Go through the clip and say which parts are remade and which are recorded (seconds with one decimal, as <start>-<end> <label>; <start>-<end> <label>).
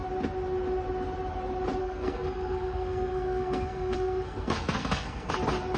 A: 0.0-1.8 recorded; 1.8-5.3 remade; 5.3-5.8 recorded